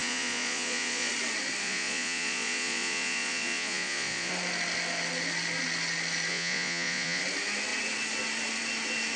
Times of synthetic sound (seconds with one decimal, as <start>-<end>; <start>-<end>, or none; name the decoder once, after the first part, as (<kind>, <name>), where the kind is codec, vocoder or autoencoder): 0.0-1.1 (vocoder, Vocos); 1.6-4.3; 6.3-7.2